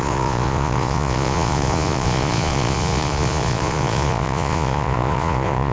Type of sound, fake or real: fake